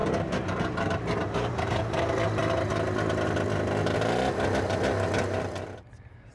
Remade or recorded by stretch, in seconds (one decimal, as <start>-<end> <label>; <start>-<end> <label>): 0.0-2.0 remade; 2.0-6.3 recorded